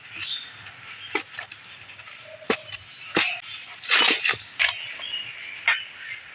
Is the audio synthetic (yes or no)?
no